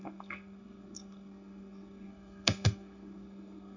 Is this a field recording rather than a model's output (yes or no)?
no